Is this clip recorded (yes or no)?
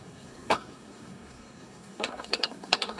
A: no